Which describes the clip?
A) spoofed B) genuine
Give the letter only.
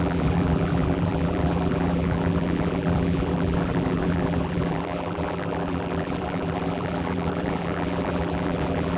A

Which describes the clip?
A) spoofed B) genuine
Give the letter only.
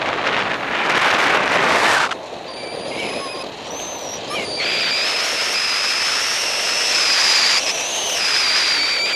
B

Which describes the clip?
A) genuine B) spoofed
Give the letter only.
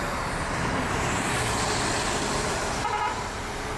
B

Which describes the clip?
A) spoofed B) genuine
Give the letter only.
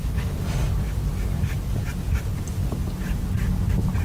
B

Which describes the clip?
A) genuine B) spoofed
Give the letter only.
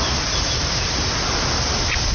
A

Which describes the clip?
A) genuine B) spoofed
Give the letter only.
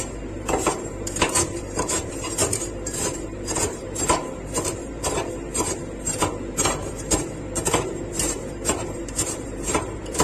B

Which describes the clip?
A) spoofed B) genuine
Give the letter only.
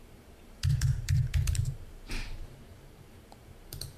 A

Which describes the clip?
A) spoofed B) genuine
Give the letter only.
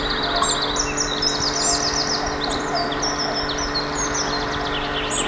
B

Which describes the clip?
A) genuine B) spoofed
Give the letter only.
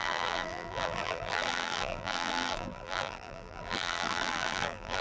B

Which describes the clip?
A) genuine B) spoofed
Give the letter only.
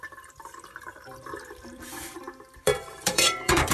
B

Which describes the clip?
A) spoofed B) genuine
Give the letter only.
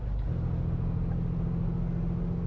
B